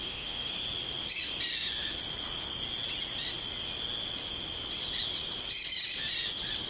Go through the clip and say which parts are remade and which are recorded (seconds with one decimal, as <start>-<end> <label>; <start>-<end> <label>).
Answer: 0.0-0.5 remade; 0.5-6.7 recorded